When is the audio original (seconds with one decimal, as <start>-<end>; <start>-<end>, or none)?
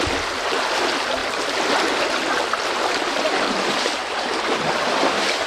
0.0-5.5